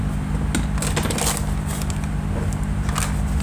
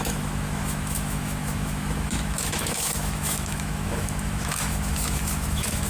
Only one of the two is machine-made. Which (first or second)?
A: second